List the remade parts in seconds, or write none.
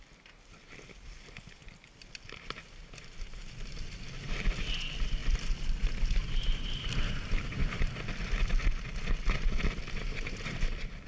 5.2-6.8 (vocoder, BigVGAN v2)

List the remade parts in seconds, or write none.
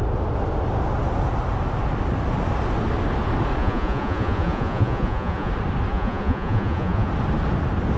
3.6-5.5 (vocoder, Vocos); 5.9-7.1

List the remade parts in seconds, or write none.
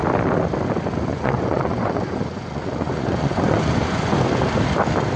1.1-4.2 (vocoder, Vocos)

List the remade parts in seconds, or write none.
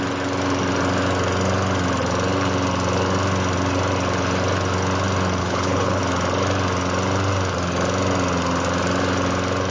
5.4-6.0 (codec, HILCodec)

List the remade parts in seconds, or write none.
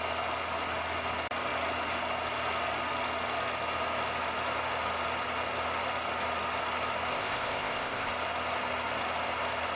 7.1-8.1 (codec, ZipCodec)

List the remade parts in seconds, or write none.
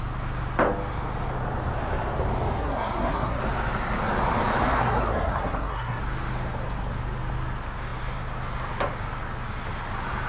2.6-3.4 (codec, SNAC); 4.8-6.0